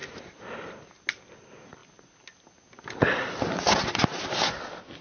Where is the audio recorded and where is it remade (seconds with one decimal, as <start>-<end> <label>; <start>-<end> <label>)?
0.0-5.0 recorded